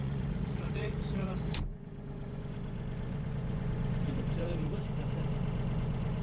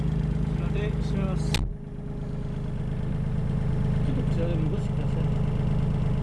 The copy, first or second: first